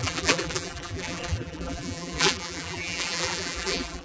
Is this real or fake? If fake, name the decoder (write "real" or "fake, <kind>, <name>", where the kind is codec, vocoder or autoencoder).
fake, vocoder, BigVGAN v2